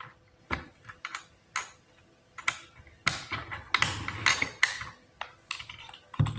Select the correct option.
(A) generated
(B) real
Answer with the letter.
B